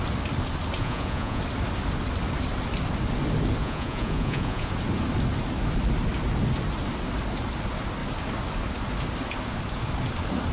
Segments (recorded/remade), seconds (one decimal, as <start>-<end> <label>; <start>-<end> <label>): 0.0-0.8 recorded; 0.8-1.4 remade; 1.4-3.6 recorded; 3.6-4.7 remade; 4.7-10.5 recorded